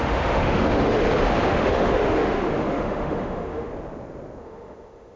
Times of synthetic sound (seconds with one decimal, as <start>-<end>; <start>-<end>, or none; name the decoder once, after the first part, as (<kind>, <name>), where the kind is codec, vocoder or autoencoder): 0.0-1.0 (autoencoder, DAC-VAE); 1.5-3.7; 4.4-5.2